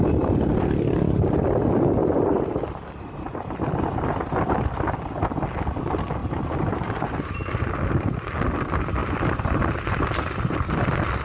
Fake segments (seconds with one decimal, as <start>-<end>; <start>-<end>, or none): 2.0-2.5; 6.2-7.7